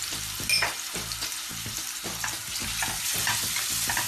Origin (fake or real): real